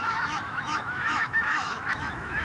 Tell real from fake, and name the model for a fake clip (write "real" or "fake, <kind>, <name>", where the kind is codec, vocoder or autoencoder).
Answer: fake, autoencoder, DAC-VAE